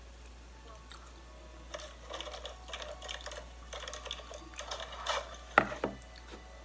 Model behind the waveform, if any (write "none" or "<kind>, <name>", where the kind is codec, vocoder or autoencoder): none